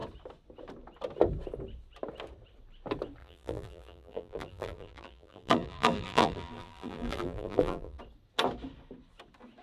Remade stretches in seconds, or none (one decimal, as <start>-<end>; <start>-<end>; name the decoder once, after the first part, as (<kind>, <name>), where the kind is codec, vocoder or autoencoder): 3.2-8.0 (vocoder, BigVGAN v2)